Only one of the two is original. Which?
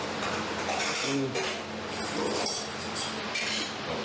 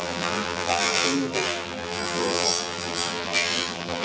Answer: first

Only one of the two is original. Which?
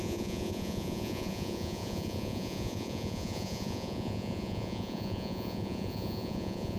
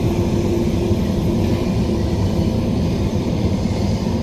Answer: second